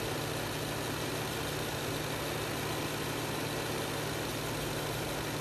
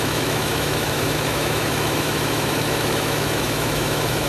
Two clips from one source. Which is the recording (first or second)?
first